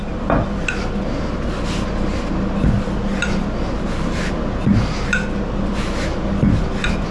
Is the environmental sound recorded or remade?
recorded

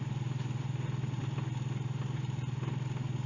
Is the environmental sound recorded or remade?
recorded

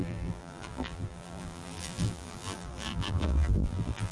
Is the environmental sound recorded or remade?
remade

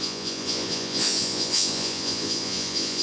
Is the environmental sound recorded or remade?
remade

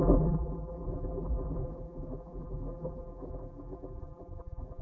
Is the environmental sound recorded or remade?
remade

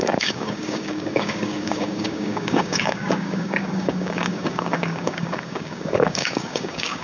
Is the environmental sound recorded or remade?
remade